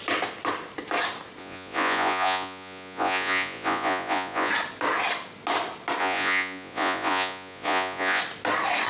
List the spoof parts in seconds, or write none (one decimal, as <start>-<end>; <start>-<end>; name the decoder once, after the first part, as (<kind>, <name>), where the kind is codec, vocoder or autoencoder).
1.4-4.5 (vocoder, Vocos); 6.0-8.2